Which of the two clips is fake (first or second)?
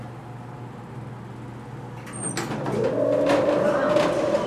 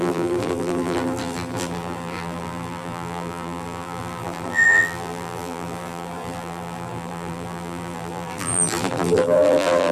second